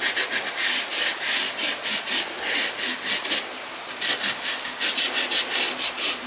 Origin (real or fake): real